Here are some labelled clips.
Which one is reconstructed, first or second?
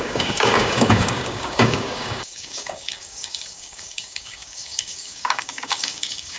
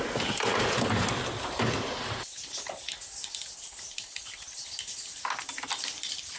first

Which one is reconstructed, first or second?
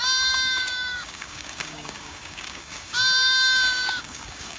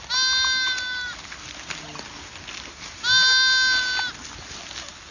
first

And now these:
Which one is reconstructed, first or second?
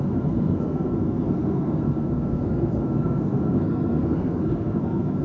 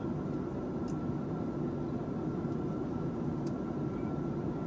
first